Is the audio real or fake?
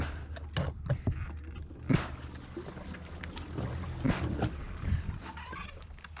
real